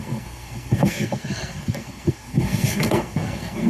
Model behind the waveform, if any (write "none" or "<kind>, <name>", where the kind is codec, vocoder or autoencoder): codec, SNAC